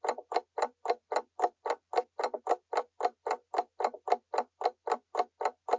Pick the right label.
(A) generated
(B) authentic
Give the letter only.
B